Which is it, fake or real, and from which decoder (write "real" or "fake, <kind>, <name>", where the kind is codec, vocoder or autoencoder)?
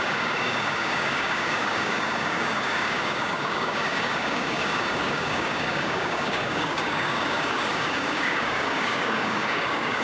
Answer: fake, codec, DAC